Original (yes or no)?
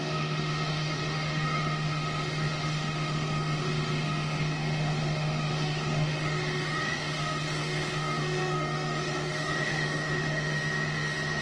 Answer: no